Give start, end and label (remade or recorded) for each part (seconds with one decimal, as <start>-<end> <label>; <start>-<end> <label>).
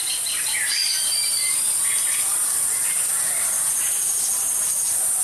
0.0-2.5 recorded; 2.5-5.2 remade